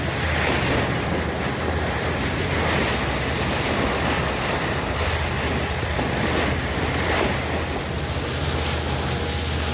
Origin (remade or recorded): recorded